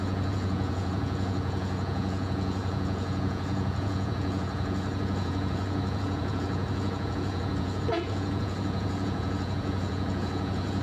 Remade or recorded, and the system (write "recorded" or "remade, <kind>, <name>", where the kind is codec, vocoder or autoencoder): remade, vocoder, Vocos